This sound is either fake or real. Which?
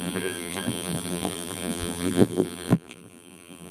fake